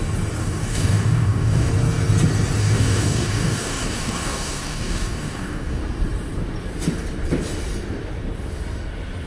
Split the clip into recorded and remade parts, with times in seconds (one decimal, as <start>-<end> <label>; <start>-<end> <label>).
0.0-0.4 recorded; 0.4-1.7 remade; 1.7-2.6 recorded; 2.6-5.8 remade; 5.8-9.3 recorded